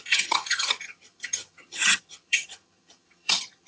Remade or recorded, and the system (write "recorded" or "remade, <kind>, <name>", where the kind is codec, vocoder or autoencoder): remade, vocoder, HiFi-GAN